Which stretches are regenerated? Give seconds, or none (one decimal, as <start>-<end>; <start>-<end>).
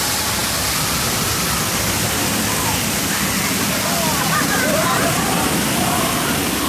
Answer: none